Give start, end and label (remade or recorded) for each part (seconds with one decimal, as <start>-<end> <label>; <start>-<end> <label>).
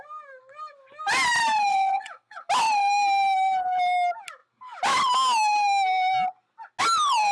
0.0-1.7 recorded; 1.7-2.5 remade; 2.5-7.3 recorded